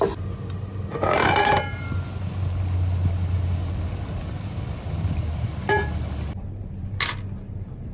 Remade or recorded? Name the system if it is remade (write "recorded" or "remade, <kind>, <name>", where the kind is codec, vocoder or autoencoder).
recorded